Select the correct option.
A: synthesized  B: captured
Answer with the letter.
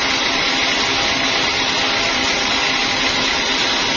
B